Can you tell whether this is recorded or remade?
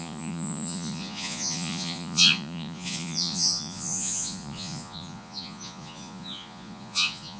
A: remade